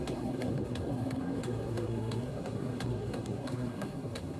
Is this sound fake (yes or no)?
yes